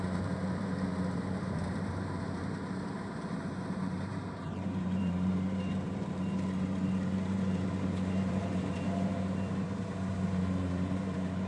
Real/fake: fake